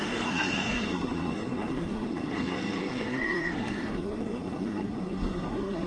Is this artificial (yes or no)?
yes